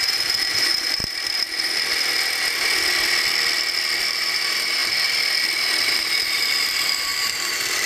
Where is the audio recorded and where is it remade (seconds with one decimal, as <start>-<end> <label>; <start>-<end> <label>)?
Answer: 0.0-1.0 remade; 1.0-4.0 recorded; 4.0-4.8 remade; 4.8-5.9 recorded; 5.9-7.9 remade